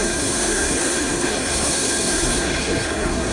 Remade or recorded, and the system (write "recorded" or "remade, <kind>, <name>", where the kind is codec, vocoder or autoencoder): remade, codec, SNAC